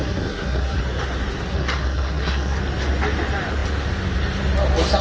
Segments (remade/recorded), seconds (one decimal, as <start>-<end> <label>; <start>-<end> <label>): 0.0-0.8 remade; 0.8-1.5 recorded; 1.5-2.6 remade; 2.6-5.0 recorded